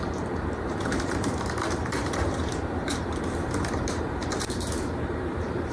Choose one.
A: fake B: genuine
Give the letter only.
A